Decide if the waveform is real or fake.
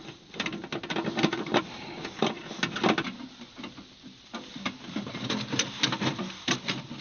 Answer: real